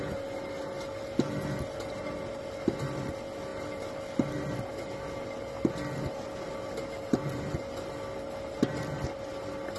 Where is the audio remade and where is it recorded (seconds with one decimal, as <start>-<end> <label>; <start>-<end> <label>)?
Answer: 0.0-9.8 recorded